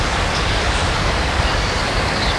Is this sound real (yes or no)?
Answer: no